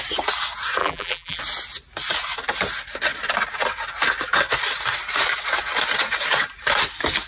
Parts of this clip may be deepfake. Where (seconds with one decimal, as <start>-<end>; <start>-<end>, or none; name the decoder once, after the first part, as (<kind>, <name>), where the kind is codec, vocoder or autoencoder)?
0.8-1.4 (vocoder, BigVGAN v2)